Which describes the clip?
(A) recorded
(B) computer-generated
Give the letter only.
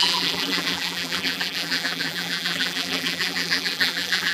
B